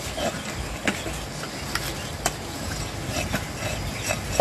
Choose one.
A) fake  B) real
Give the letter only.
B